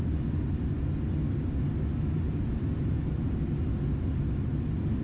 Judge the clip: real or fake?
real